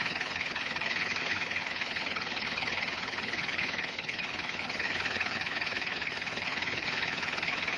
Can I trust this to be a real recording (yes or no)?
no